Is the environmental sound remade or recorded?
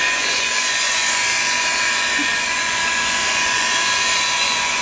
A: remade